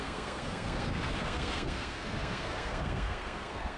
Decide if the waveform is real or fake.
fake